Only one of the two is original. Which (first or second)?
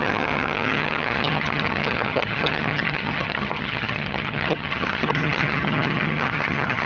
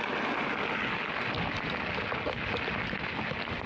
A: second